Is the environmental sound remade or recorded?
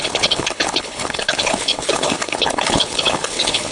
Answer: remade